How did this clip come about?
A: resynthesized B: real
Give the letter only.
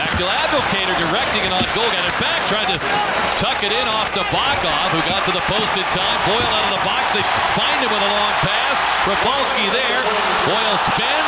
B